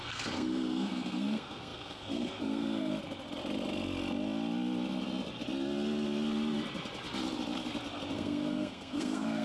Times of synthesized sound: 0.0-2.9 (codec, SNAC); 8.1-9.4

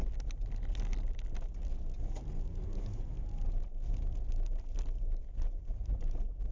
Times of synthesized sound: none

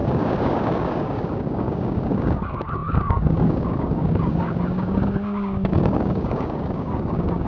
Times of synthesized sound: 0.0-7.5 (codec, DAC)